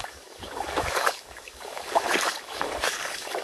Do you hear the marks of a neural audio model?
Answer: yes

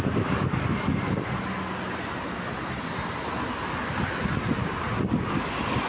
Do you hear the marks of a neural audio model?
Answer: no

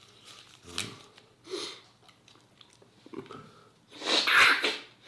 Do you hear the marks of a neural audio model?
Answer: no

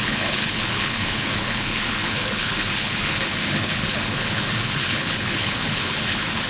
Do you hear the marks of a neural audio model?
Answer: yes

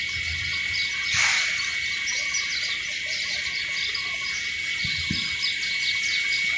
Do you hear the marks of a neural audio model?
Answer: no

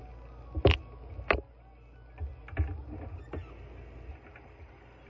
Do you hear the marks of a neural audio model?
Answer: no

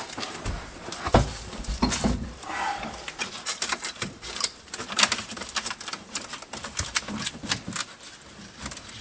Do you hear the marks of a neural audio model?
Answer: yes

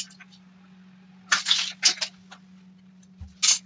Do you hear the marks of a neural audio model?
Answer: no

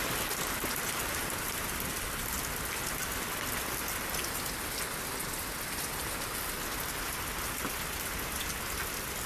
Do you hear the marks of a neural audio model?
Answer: no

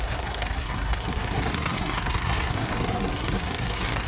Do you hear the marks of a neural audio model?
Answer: yes